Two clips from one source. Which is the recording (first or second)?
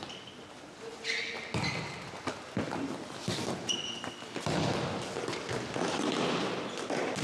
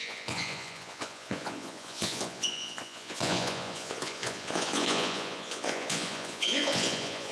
first